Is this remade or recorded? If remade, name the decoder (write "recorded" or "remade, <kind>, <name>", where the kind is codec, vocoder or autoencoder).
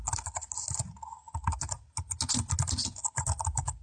recorded